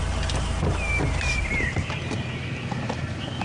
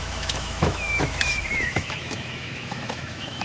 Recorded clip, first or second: first